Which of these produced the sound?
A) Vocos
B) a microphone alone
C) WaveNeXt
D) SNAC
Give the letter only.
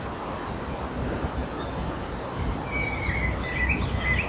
B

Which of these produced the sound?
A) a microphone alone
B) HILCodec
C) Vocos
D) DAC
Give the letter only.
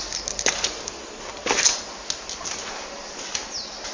A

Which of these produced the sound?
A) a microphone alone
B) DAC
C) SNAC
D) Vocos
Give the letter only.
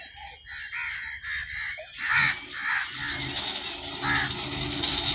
A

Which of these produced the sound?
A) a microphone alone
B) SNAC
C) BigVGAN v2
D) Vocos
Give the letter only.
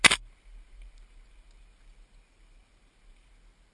A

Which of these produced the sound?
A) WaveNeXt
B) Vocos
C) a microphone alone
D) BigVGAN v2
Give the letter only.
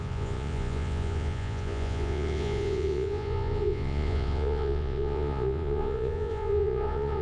B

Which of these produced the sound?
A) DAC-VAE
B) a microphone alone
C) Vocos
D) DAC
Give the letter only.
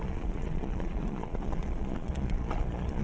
C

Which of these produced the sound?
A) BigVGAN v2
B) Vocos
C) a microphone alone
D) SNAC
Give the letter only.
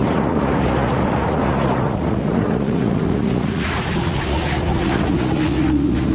B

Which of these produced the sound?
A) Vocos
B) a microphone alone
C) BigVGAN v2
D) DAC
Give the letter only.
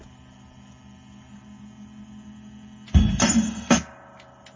B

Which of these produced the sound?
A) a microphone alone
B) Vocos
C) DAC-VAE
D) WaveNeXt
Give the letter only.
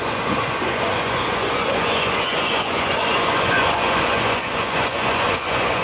B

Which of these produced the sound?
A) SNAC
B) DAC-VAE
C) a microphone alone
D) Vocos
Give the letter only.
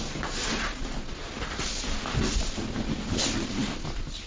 C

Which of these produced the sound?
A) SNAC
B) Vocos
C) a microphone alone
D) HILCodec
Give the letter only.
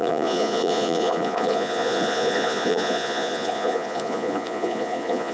B